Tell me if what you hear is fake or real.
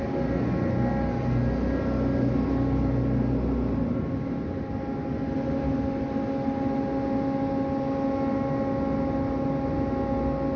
real